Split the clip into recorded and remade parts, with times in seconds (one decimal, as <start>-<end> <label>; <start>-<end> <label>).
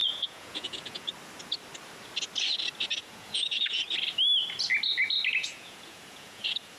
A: 0.0-1.1 remade; 1.1-3.0 recorded; 3.0-3.9 remade; 3.9-5.4 recorded; 5.4-6.8 remade